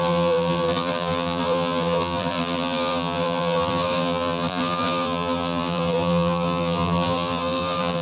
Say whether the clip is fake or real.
fake